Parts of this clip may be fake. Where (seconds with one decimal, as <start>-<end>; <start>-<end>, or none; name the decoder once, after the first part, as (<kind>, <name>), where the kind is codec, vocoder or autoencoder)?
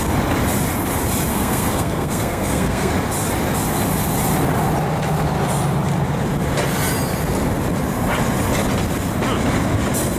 1.3-2.9 (codec, SNAC)